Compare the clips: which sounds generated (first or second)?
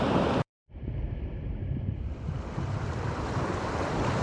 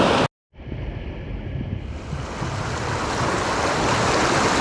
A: first